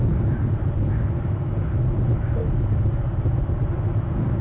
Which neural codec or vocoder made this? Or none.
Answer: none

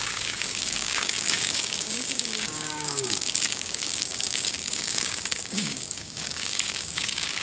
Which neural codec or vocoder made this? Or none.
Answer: codec, DAC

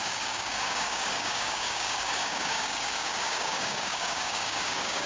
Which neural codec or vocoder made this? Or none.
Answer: codec, DAC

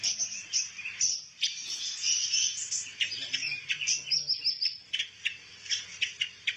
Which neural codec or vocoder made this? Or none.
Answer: none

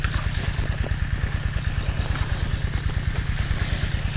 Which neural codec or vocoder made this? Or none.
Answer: none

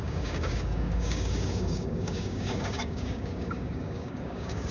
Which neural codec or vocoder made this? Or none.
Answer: codec, DAC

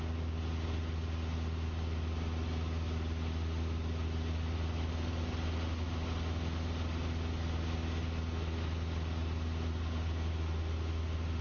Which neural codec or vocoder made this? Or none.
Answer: none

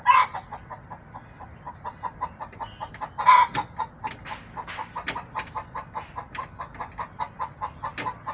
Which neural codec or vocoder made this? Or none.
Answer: none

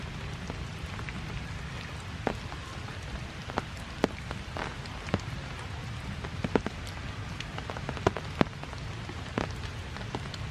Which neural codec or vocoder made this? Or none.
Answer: none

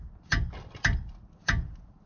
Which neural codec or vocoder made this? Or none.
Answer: none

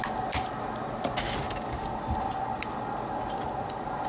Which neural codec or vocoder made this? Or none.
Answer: none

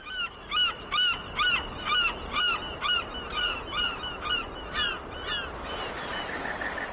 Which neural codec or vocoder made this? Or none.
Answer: none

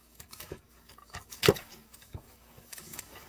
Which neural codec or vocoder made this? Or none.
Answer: codec, DAC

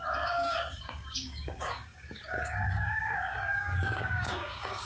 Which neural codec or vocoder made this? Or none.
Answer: codec, DAC